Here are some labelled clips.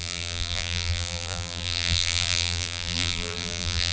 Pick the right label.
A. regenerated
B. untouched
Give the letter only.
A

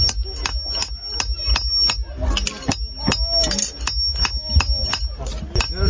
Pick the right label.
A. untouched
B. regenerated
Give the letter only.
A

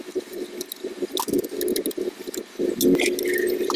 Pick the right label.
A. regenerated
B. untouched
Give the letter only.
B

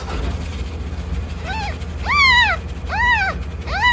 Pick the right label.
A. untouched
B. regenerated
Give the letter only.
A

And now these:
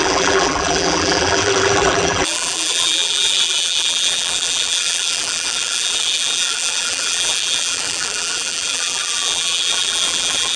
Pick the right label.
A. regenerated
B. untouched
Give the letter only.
A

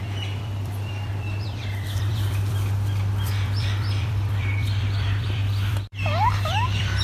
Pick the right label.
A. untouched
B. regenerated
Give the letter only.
B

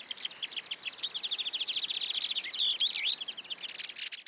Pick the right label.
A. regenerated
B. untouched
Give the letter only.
B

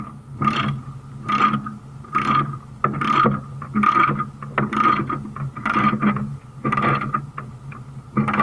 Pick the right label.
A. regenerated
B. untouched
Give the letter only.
B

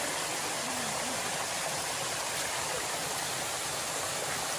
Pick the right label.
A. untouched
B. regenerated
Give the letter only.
B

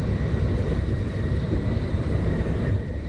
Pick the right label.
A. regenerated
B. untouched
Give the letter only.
A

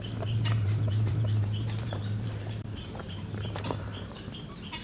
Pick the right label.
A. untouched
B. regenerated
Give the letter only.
B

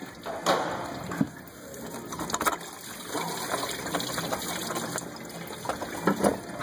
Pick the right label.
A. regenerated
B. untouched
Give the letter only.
B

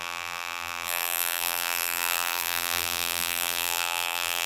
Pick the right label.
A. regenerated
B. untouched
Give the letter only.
A